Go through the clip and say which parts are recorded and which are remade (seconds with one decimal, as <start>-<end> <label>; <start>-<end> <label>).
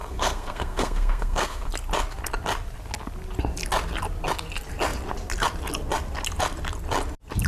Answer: 0.0-1.7 remade; 1.7-7.5 recorded